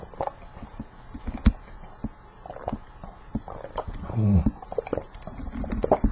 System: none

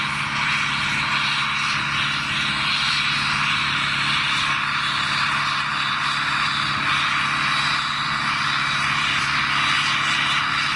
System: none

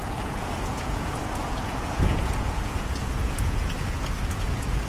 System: vocoder, Vocos